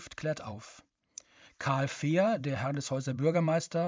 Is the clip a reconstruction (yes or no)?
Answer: yes